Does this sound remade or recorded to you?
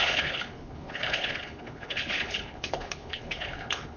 remade